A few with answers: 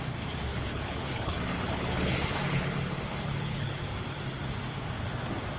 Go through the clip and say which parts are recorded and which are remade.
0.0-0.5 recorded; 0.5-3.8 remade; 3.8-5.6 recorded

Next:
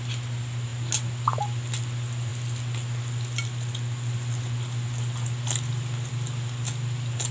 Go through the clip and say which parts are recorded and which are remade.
0.0-7.3 recorded

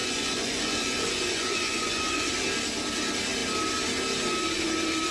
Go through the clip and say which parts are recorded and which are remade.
0.0-2.3 remade; 2.3-5.1 recorded

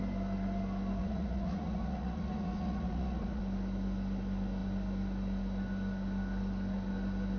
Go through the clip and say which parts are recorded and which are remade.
0.0-1.0 recorded; 1.0-3.4 remade; 3.4-7.4 recorded

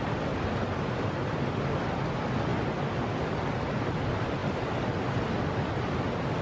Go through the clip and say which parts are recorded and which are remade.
0.0-6.4 recorded

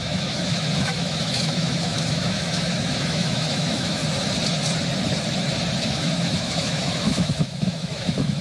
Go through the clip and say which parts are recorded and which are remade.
0.0-4.0 remade; 4.0-5.8 recorded; 5.8-8.4 remade